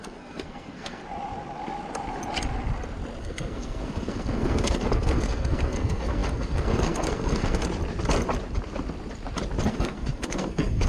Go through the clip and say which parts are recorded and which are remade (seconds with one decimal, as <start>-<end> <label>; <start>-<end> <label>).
0.0-1.0 remade; 1.0-3.2 recorded; 3.2-7.6 remade; 7.6-9.7 recorded; 9.7-10.9 remade